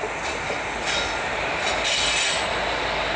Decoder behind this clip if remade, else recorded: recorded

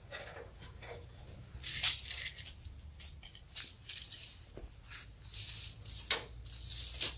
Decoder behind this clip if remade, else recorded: recorded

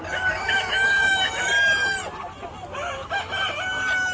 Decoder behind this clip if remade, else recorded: recorded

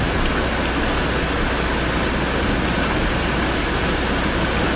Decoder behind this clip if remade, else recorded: recorded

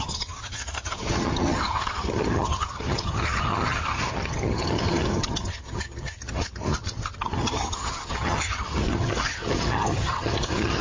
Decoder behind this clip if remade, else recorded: remade, vocoder, HiFi-GAN